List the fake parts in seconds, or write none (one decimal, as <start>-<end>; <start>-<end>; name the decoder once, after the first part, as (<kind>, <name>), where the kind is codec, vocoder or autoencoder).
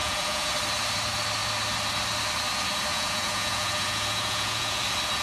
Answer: 0.0-0.5 (vocoder, Vocos); 2.9-4.8